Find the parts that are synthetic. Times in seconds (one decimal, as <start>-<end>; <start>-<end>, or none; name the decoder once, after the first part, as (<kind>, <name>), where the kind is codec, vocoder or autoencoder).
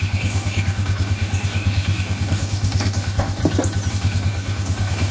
0.0-3.4 (codec, DAC); 3.9-5.1